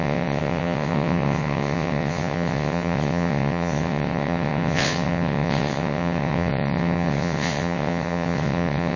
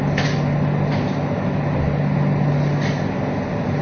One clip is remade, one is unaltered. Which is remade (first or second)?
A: first